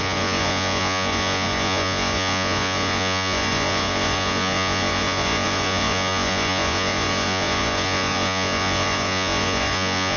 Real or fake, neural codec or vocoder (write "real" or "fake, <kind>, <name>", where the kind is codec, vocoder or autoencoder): fake, vocoder, Vocos